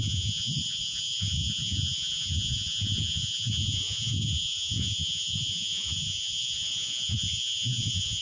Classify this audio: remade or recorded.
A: remade